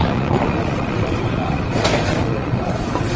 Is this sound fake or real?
fake